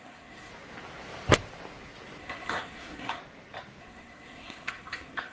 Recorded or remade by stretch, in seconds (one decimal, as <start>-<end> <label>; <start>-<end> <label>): 0.0-0.5 remade; 0.5-2.2 recorded; 2.2-3.2 remade; 3.2-3.8 recorded; 3.8-5.3 remade